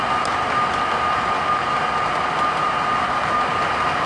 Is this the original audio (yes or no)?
yes